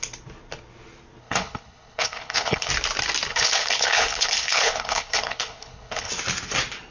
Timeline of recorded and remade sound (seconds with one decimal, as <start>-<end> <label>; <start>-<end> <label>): 0.0-1.2 recorded; 1.2-2.7 remade; 2.7-3.3 recorded; 3.3-6.1 remade; 6.1-6.9 recorded